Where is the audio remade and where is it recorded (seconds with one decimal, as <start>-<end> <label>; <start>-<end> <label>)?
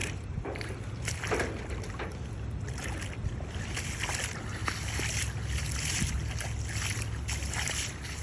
0.0-0.7 remade; 0.7-8.2 recorded